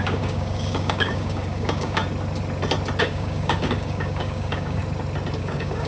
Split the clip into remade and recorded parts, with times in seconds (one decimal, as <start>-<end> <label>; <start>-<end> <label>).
0.0-2.0 remade; 2.0-3.0 recorded; 3.0-4.8 remade; 4.8-5.4 recorded; 5.4-5.9 remade